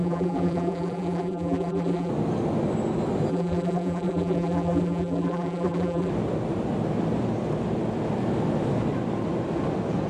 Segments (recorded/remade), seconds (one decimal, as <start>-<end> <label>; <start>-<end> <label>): 0.0-2.1 remade; 2.1-3.3 recorded; 3.3-6.1 remade; 6.1-10.1 recorded